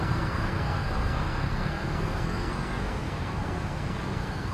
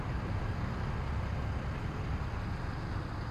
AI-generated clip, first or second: first